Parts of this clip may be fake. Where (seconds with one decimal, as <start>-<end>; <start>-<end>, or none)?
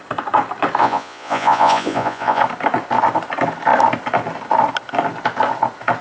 0.8-2.4